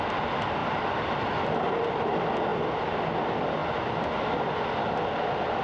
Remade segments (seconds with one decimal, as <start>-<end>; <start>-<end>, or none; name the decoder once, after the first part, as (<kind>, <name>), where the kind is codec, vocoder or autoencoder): none